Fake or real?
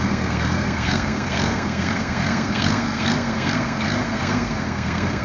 fake